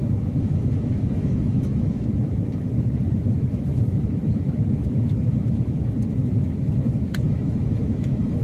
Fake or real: fake